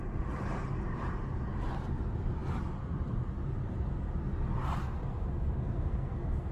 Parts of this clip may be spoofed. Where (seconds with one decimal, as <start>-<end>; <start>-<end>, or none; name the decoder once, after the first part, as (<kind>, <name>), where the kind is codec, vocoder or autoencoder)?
4.8-6.5 (codec, SNAC)